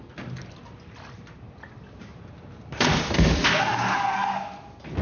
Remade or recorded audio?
recorded